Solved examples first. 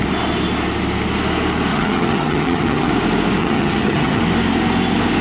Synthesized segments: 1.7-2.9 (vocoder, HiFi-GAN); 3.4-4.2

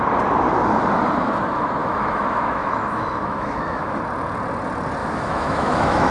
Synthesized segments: 1.8-4.0 (autoencoder, DAC-VAE); 5.0-6.1

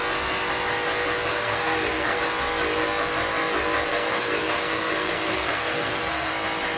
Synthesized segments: 1.3-2.2 (codec, SNAC); 3.9-6.3

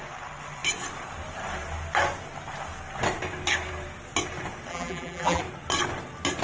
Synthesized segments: 4.7-5.4 (vocoder, BigVGAN v2)